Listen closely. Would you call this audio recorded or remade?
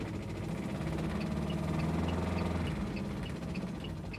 recorded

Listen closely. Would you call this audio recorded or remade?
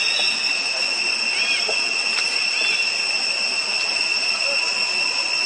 recorded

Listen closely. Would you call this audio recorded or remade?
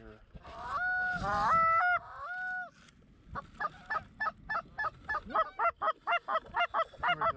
recorded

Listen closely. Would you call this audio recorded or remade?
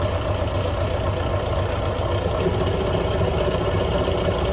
recorded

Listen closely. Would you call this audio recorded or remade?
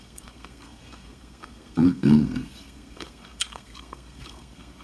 remade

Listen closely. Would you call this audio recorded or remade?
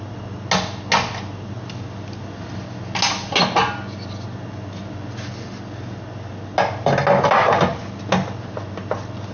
recorded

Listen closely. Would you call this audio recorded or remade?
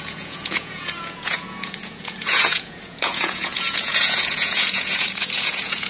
remade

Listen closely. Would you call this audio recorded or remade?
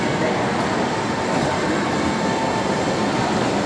recorded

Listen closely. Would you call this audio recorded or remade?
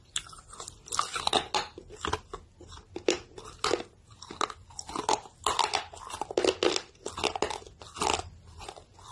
recorded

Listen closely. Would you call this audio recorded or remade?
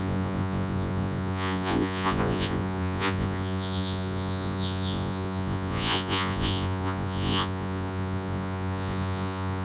remade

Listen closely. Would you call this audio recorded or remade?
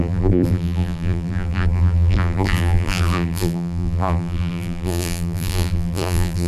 remade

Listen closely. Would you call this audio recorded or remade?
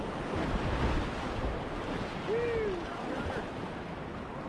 recorded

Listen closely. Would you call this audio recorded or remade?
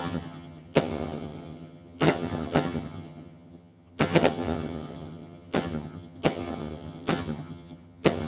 remade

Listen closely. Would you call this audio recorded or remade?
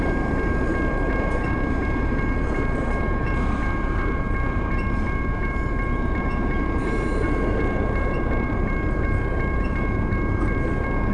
remade